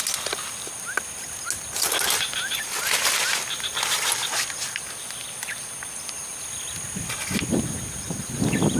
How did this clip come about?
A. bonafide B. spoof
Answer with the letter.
A